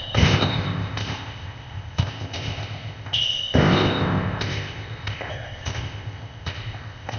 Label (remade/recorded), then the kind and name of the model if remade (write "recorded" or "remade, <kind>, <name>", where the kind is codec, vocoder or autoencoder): remade, codec, ZipCodec